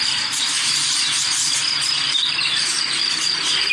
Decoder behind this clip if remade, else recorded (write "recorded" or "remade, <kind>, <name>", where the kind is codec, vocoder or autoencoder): remade, vocoder, BigVGAN v2